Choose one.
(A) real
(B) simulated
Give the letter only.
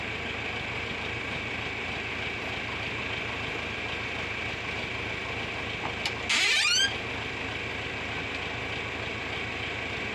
A